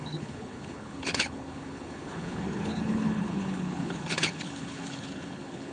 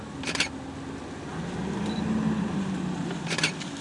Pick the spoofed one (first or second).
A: first